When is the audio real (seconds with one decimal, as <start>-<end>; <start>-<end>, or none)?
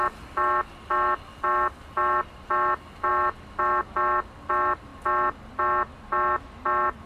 0.0-7.1